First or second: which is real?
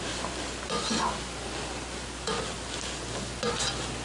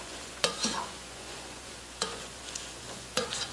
first